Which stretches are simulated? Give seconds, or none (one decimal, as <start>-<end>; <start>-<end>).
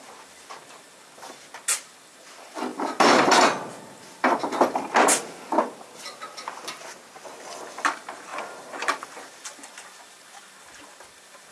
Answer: 8.3-9.1